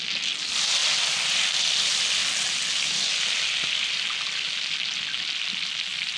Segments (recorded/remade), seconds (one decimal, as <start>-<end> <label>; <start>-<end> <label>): 0.0-6.2 recorded